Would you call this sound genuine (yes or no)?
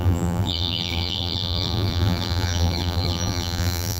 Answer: no